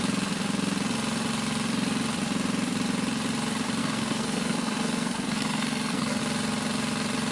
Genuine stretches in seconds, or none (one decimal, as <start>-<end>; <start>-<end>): 0.0-3.8; 6.2-7.3